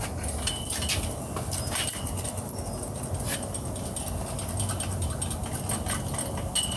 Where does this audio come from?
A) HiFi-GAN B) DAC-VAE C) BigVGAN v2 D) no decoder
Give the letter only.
D